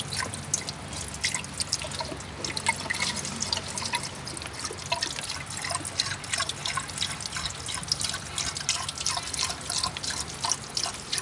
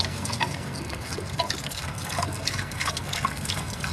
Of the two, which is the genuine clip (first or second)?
first